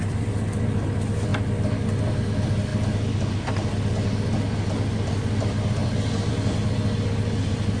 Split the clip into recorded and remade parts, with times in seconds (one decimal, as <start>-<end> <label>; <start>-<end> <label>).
0.0-7.8 recorded